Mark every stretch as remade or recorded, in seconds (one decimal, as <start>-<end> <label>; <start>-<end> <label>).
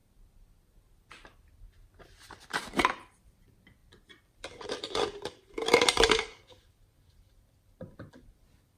0.0-2.6 recorded; 2.6-8.8 remade